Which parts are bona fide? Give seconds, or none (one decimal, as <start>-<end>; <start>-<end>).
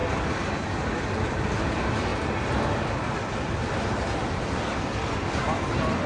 0.0-6.1